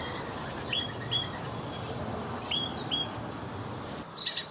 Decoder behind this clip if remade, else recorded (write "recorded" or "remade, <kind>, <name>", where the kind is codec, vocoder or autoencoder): remade, vocoder, BigVGAN v2